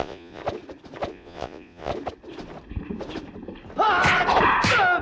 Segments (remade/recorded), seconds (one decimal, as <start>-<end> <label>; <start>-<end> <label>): 0.0-0.4 remade; 0.4-1.1 recorded; 1.1-1.9 remade; 1.9-5.0 recorded